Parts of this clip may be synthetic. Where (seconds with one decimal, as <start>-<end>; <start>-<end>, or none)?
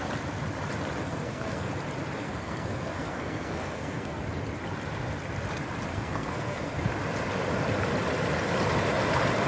1.0-1.7; 2.2-4.2; 5.9-6.9